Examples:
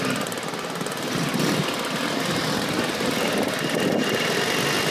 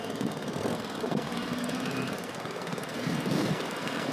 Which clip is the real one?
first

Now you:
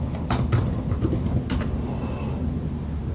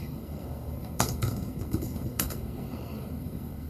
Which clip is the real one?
first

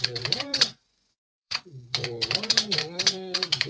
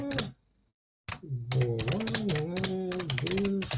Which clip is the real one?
second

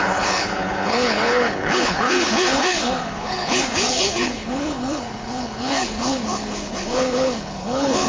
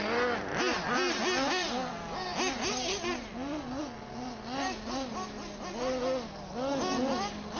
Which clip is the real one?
second